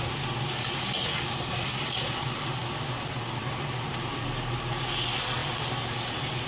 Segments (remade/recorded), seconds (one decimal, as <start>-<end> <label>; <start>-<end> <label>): 0.0-6.5 recorded